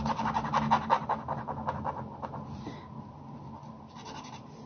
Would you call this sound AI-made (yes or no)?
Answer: no